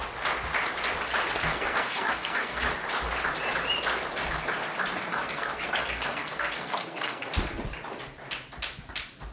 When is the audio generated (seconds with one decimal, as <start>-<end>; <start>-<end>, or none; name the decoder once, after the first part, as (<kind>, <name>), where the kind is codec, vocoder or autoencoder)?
1.5-2.6 (codec, SNAC); 5.1-7.3